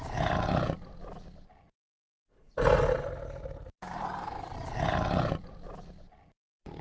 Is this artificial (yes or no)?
no